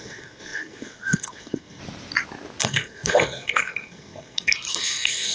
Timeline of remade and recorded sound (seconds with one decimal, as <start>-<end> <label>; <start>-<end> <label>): 0.0-1.8 remade; 1.8-2.6 recorded; 2.6-5.3 remade